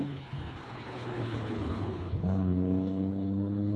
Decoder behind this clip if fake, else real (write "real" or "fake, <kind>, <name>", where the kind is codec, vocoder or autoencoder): fake, codec, HILCodec